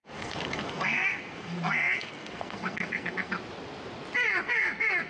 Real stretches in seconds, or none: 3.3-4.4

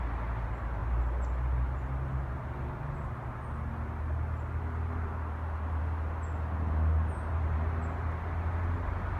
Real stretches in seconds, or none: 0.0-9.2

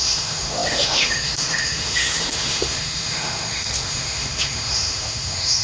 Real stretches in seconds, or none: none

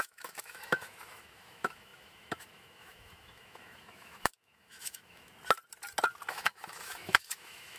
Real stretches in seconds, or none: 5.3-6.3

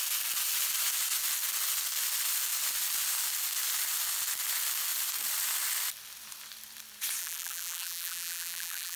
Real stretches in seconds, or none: 0.0-7.2

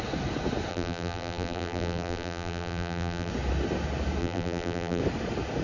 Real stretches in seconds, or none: 0.0-0.7; 3.3-4.2; 5.0-5.6

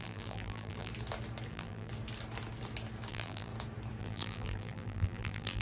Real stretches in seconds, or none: 0.9-1.5; 1.9-3.1; 3.5-4.0

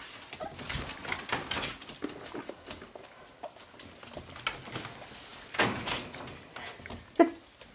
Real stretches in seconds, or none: 0.0-7.7